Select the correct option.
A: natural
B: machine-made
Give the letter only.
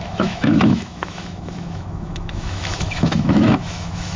B